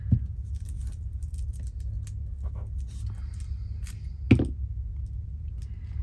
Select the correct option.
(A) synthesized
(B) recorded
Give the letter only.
B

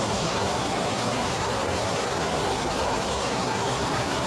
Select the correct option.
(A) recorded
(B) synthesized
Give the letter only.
B